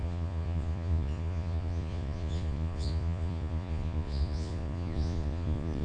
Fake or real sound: fake